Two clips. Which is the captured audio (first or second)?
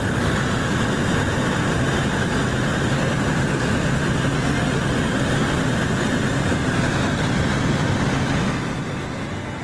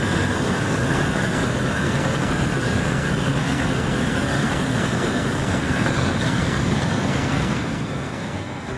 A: first